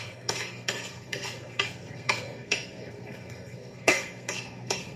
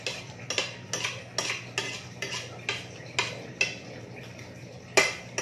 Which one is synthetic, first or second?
first